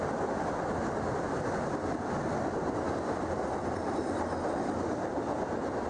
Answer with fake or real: real